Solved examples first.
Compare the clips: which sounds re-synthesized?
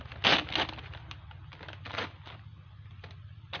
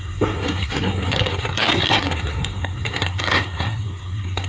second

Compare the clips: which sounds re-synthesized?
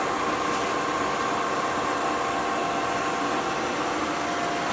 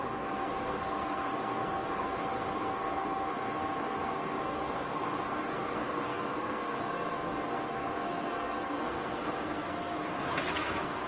second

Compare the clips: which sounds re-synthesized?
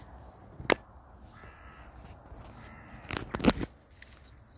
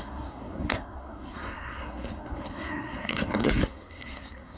second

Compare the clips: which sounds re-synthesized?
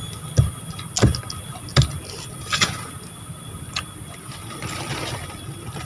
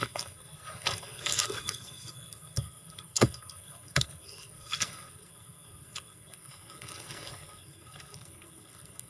second